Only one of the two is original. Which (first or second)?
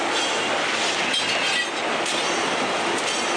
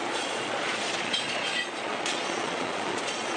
first